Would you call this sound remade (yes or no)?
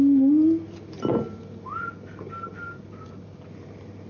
no